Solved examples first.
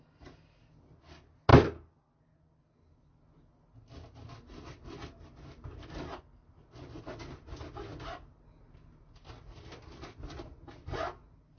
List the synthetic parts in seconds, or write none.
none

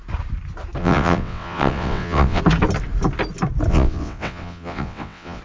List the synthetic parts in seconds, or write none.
0.8-2.4 (vocoder, WaveNeXt); 3.7-5.4

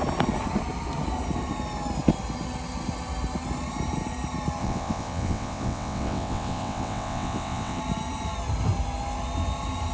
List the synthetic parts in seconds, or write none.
4.6-7.8 (vocoder, WaveNeXt)

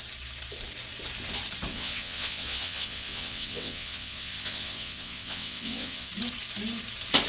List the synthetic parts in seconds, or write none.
1.7-6.1 (vocoder, WaveNeXt)

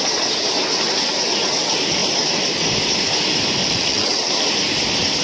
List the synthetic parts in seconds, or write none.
3.6-4.3 (vocoder, WaveNeXt)

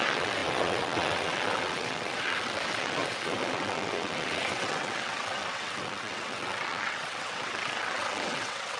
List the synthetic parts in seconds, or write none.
0.0-8.8 (vocoder, WaveNeXt)